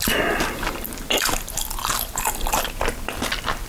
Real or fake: real